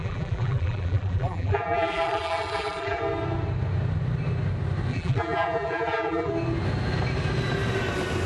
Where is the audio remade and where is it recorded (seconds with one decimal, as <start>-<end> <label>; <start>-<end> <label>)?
0.0-3.0 remade; 3.0-4.9 recorded; 4.9-6.3 remade; 6.3-8.3 recorded